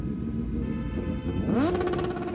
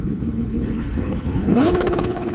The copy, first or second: second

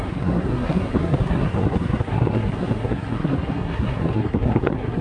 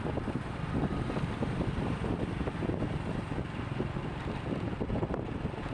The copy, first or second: first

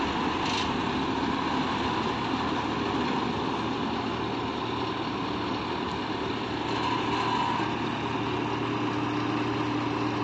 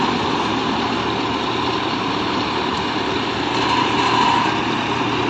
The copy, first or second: second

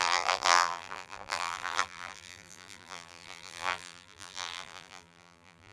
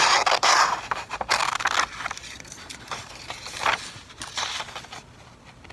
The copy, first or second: first